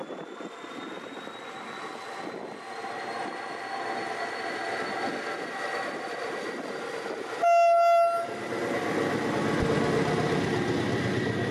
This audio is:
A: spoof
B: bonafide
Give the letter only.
B